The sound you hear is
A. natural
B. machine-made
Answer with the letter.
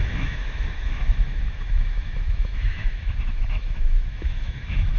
B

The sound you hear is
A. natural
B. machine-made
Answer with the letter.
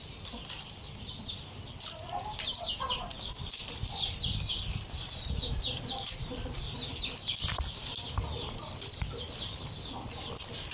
A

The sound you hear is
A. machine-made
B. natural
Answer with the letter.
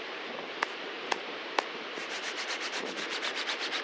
A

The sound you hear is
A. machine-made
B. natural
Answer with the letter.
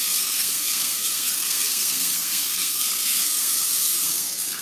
A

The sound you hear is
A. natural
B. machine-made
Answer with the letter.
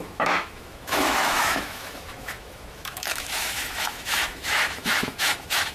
B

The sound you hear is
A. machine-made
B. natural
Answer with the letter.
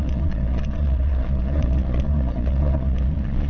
A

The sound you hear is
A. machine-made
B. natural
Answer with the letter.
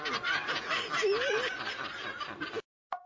B